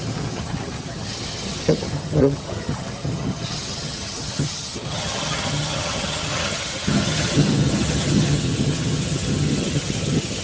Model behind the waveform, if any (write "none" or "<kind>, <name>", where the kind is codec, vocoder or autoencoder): vocoder, HiFi-GAN